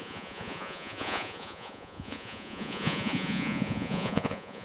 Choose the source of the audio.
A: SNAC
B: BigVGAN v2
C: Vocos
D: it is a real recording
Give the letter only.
C